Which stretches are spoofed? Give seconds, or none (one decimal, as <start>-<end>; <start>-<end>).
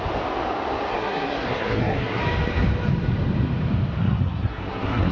0.9-2.2; 4.0-5.1